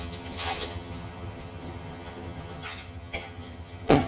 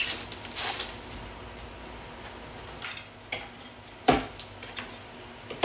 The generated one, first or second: first